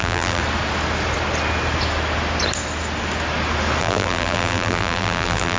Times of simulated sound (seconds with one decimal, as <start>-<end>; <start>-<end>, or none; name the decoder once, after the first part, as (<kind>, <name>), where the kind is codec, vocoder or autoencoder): 0.0-0.4 (vocoder, BigVGAN v2); 3.8-5.6